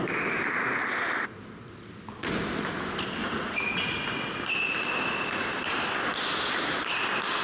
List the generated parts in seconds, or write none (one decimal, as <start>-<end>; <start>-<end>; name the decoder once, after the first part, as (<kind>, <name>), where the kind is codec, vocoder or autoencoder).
3.2-3.8 (vocoder, Vocos)